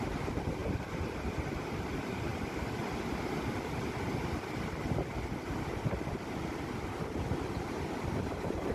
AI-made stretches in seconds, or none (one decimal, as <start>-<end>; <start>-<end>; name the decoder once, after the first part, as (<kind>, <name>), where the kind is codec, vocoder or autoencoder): none